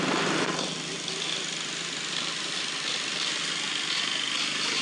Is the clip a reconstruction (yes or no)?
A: no